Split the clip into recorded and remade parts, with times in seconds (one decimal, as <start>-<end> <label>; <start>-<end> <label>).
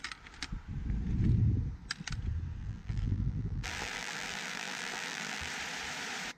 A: 0.0-2.6 recorded; 2.6-5.5 remade; 5.5-6.4 recorded